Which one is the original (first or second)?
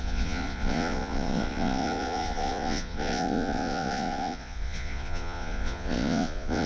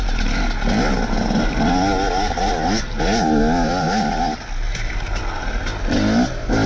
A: second